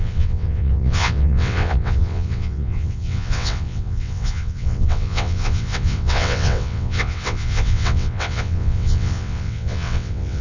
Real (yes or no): no